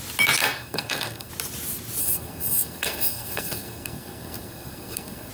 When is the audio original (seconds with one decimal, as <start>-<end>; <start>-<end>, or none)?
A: 0.0-0.4; 1.3-2.0